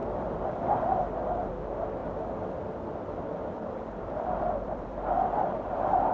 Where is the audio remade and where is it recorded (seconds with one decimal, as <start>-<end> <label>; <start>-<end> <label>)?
0.0-1.5 remade; 1.5-2.0 recorded; 2.0-6.1 remade